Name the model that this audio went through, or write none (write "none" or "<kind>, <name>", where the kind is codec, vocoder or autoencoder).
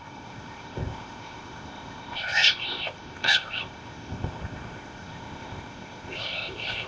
codec, ZipCodec